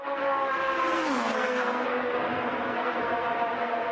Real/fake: fake